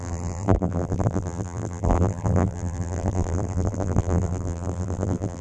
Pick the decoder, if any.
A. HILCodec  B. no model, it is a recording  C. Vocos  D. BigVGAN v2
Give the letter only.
D